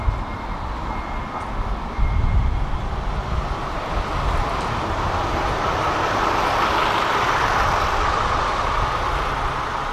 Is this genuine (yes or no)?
yes